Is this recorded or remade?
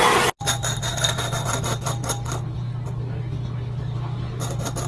recorded